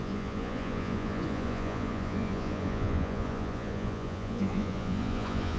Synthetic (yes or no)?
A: yes